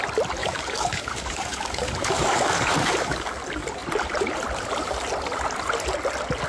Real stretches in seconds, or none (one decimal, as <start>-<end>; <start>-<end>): 0.0-0.4; 3.4-6.5